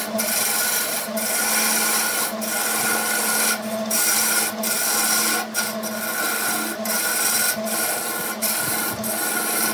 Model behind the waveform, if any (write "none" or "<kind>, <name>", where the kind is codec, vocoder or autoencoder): none